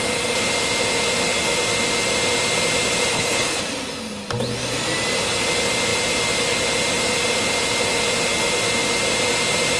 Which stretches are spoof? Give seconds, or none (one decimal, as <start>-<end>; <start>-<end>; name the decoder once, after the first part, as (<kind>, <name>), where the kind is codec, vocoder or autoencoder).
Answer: 3.1-3.6 (codec, HILCodec)